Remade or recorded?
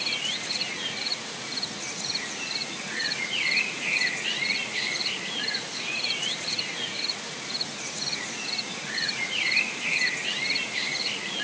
remade